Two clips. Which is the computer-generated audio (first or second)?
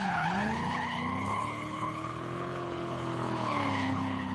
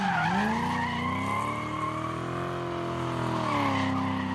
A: first